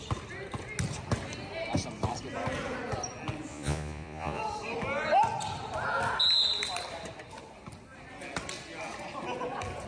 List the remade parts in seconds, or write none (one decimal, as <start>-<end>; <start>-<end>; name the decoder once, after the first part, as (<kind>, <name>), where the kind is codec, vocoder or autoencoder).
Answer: 3.5-4.4 (vocoder, Vocos)